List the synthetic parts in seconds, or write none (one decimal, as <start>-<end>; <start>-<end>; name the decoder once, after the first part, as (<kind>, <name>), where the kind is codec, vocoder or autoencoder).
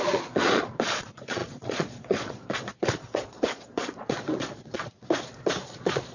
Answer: 0.0-6.1 (vocoder, Vocos)